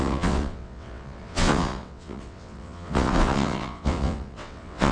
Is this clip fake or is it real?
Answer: fake